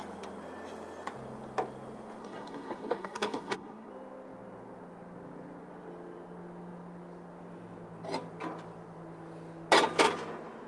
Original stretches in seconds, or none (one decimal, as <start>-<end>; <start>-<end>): 0.0-2.2; 3.9-10.7